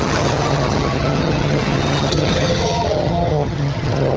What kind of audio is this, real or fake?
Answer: fake